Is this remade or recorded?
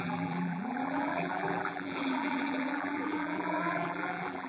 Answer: remade